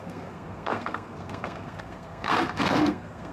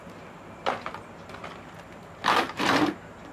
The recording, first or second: second